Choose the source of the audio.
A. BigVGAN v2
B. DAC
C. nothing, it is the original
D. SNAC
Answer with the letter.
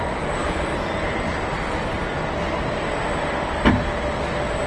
C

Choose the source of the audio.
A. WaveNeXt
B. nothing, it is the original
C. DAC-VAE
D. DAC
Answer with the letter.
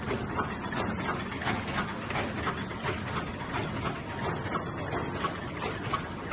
B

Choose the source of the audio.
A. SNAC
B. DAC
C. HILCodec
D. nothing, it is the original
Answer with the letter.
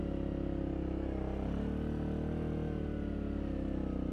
D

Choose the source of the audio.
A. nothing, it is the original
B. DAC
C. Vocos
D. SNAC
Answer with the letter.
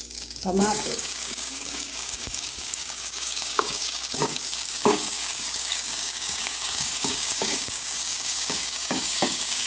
B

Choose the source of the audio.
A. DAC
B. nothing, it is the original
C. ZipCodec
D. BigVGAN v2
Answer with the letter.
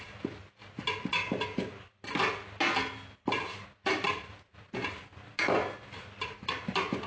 B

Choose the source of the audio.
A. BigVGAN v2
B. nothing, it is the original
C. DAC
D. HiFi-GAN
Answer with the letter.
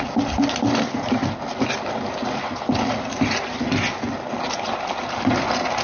B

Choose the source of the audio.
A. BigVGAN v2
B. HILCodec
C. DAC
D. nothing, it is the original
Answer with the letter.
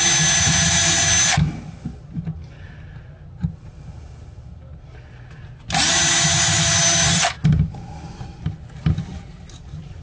D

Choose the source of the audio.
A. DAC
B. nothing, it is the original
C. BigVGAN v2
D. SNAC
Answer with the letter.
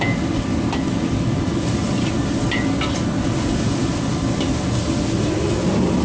B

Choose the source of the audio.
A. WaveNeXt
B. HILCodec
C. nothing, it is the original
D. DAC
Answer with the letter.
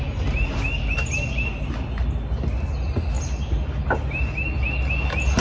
C